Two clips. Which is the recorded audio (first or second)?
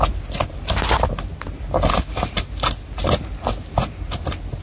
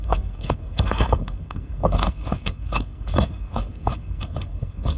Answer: first